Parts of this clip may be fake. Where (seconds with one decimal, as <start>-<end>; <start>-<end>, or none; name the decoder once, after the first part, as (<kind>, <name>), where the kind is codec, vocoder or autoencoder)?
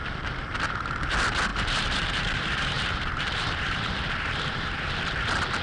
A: 1.5-4.9 (vocoder, BigVGAN v2)